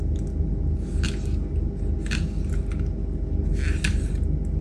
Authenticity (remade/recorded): recorded